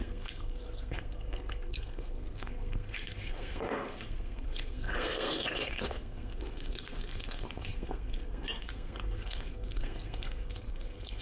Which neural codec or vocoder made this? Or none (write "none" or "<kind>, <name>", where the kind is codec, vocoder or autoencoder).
codec, SNAC